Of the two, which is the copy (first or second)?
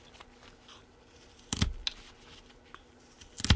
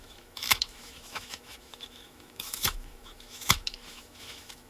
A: second